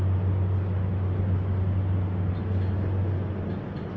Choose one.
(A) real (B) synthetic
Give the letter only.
A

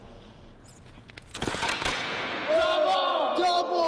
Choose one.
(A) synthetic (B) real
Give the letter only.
A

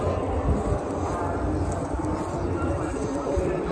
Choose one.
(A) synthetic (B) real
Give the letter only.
B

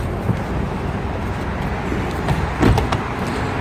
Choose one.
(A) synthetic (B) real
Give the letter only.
B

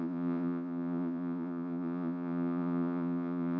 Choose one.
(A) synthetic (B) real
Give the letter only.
A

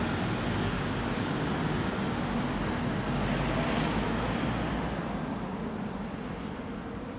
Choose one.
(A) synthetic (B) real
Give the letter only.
B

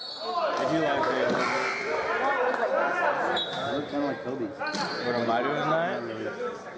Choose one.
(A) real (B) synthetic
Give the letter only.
A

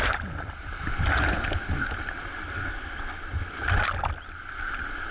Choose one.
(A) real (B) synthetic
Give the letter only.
A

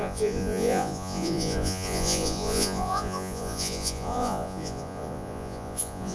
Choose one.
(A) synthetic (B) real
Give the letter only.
A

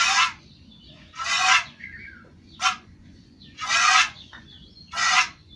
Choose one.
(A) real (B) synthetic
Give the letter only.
B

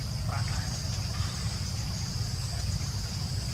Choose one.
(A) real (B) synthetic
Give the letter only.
A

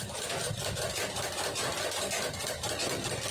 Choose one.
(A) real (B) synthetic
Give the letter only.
A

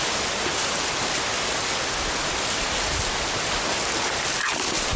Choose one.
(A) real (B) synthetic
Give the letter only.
A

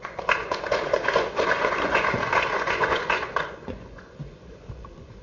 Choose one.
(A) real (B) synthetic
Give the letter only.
B